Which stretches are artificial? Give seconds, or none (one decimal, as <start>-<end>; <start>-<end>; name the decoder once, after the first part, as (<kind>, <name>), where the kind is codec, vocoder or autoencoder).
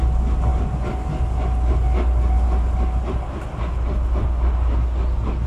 none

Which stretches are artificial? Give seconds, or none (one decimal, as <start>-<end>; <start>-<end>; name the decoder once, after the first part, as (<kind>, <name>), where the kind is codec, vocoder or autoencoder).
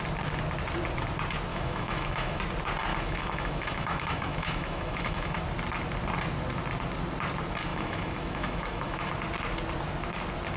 1.5-2.4 (autoencoder, DAC-VAE); 2.9-5.4; 7.7-9.1